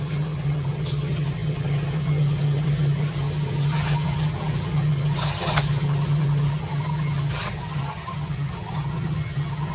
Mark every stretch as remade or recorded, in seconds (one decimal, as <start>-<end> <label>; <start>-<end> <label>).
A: 0.0-9.7 remade